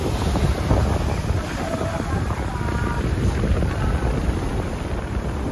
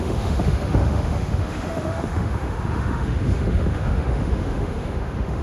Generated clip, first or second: second